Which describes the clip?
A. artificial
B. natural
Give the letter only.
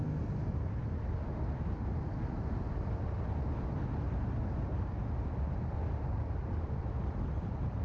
B